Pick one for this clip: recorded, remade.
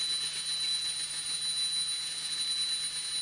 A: recorded